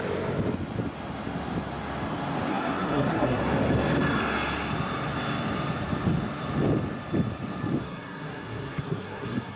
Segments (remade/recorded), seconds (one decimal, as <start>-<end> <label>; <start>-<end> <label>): 0.0-2.5 recorded; 2.5-3.4 remade; 3.4-7.8 recorded; 7.8-9.6 remade